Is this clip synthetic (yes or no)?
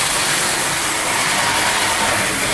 no